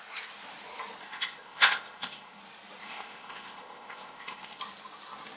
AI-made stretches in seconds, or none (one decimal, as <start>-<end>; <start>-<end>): 1.1-2.4; 2.8-4.6